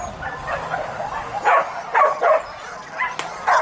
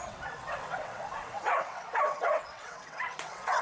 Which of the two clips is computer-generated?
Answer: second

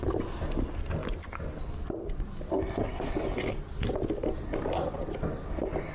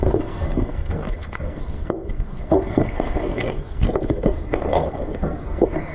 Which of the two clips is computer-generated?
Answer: second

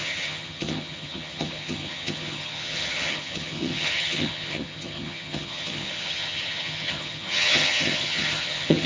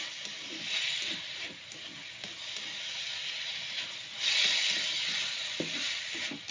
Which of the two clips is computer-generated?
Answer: first